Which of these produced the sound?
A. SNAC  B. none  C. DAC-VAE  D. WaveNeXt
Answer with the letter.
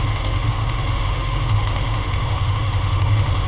C